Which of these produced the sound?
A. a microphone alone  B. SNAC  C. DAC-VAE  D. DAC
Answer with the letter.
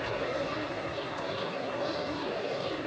B